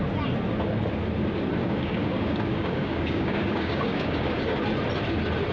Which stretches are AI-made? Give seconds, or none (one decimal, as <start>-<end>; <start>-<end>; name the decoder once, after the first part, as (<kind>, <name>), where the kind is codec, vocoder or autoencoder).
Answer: 1.6-4.4 (codec, DAC)